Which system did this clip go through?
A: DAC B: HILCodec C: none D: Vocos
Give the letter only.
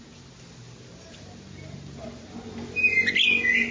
C